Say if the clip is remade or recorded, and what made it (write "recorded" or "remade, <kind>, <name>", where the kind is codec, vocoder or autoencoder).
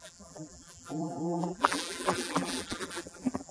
remade, vocoder, BigVGAN v2